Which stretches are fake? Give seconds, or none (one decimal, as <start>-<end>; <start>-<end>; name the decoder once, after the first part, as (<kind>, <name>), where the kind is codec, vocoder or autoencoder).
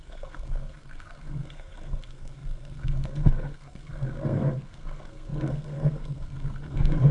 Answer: 0.0-7.1 (codec, SNAC)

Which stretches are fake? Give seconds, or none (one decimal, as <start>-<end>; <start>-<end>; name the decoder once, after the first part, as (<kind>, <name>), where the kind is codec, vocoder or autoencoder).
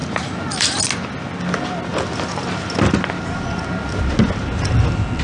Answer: none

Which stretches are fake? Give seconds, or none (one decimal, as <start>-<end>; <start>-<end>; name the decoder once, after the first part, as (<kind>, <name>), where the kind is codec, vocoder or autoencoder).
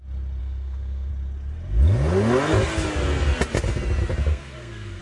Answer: 0.4-1.1 (codec, SNAC); 4.3-5.0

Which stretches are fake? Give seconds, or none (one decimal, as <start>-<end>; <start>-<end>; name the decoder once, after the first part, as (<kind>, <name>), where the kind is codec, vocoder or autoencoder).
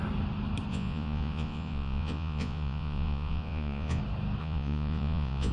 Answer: 0.7-4.0 (vocoder, Vocos); 4.4-5.5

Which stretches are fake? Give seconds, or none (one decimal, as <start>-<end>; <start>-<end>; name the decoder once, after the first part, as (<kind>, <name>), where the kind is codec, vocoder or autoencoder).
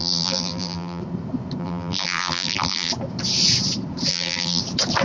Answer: 0.0-1.0 (vocoder, BigVGAN v2); 1.6-2.9; 4.1-4.6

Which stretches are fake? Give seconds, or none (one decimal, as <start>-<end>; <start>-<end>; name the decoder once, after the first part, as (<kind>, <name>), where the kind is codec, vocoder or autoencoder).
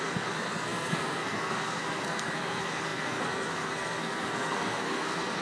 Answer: 0.0-5.4 (codec, SNAC)